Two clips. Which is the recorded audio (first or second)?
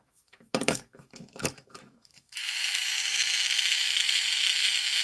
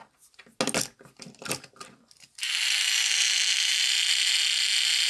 second